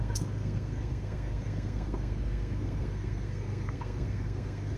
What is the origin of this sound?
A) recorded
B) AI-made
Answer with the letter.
B